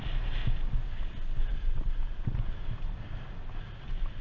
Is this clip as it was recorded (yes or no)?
yes